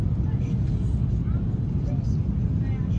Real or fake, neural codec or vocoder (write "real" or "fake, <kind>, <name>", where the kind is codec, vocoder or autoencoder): real